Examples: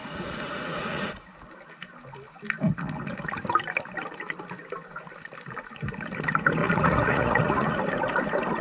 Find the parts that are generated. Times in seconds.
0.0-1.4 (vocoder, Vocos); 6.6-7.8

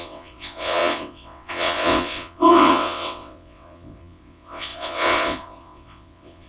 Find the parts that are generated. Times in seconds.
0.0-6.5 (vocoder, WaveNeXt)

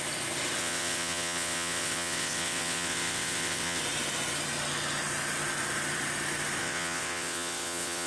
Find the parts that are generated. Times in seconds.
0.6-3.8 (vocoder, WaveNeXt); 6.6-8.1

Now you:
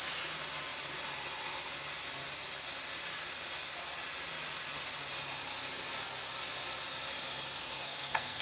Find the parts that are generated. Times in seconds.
7.6-8.4 (codec, SNAC)